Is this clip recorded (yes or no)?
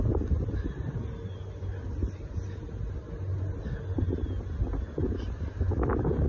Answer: yes